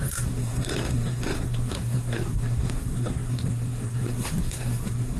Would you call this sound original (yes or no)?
no